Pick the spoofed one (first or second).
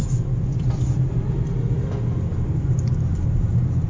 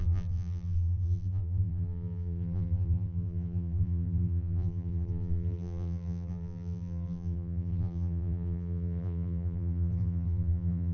second